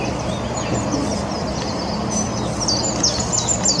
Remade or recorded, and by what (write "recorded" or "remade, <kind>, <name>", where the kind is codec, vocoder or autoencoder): recorded